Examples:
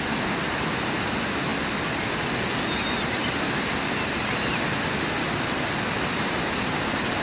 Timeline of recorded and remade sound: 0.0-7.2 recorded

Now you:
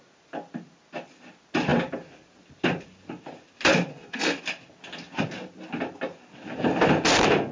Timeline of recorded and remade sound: 0.0-3.9 recorded; 3.9-4.4 remade; 4.4-7.5 recorded

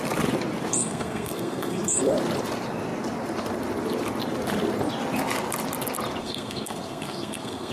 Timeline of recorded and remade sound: 0.0-0.7 recorded; 0.7-2.1 remade; 2.1-6.2 recorded; 6.2-7.7 remade